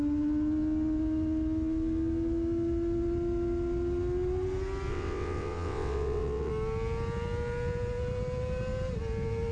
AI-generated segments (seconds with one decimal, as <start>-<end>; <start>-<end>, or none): 4.9-6.5